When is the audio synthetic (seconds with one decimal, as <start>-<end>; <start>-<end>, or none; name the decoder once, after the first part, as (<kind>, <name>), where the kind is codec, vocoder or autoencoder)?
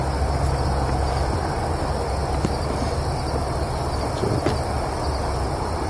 none